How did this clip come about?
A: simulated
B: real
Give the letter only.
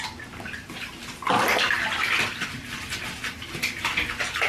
B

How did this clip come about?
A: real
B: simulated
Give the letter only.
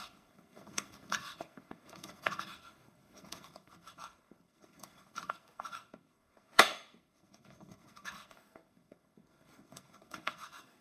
B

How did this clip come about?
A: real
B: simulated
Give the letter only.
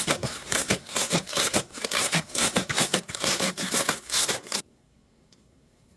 B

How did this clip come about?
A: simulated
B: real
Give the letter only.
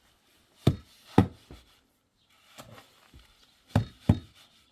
B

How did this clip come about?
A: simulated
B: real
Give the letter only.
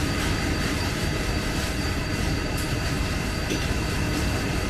A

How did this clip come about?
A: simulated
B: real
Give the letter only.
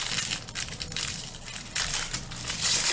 A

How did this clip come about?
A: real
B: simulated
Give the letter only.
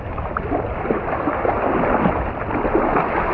A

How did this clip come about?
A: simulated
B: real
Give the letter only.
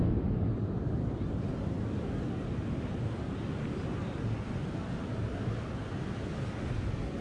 B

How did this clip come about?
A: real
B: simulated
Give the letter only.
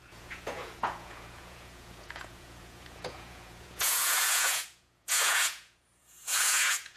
B